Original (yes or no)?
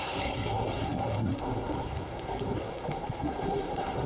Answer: no